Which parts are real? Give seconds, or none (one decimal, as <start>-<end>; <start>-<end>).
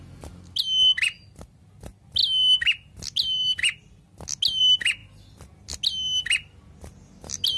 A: 0.0-7.6